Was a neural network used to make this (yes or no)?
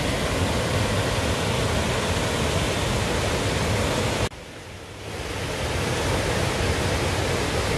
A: no